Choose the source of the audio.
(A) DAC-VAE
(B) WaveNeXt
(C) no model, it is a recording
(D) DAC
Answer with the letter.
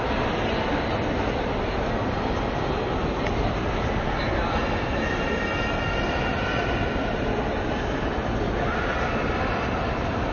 C